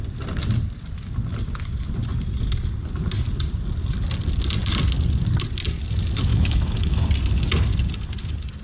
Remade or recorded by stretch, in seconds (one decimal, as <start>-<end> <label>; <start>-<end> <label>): 0.0-6.3 recorded; 6.3-7.0 remade; 7.0-8.6 recorded